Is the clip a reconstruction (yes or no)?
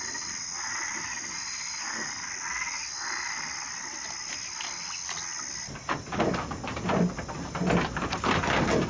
no